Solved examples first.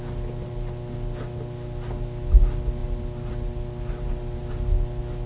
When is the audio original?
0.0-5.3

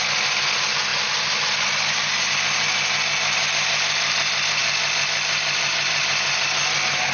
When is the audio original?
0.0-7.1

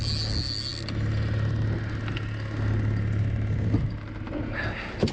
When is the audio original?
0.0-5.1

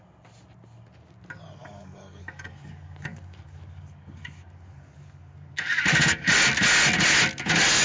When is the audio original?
0.0-1.6; 6.3-7.8

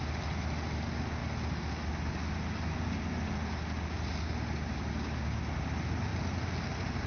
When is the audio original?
0.0-4.9; 5.4-7.1